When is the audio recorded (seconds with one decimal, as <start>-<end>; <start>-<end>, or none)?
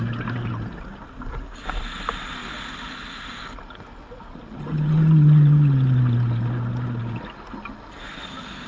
0.0-8.7